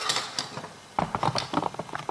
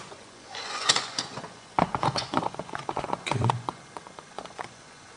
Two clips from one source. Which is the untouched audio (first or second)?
first